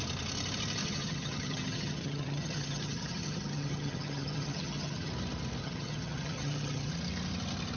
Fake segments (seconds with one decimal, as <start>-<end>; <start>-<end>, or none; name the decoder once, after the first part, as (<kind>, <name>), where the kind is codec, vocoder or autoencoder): 0.8-5.1 (vocoder, HiFi-GAN); 5.6-6.9